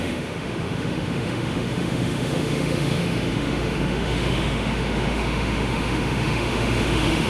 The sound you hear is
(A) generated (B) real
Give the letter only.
A